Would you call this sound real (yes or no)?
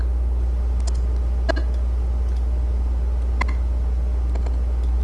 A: yes